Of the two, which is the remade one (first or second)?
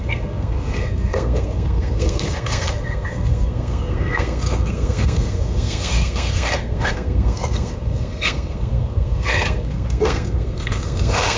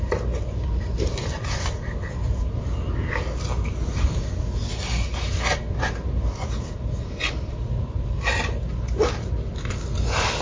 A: first